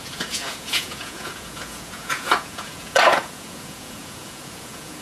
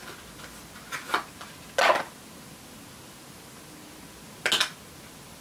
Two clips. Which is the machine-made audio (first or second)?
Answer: first